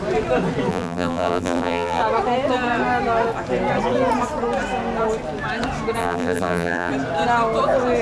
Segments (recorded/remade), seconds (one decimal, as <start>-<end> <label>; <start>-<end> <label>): 0.0-0.7 recorded; 0.7-2.0 remade; 2.0-6.0 recorded; 6.0-6.9 remade; 6.9-8.0 recorded